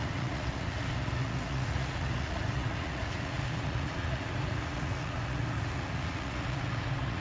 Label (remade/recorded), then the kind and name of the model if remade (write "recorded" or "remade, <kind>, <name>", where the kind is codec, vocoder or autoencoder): remade, vocoder, Vocos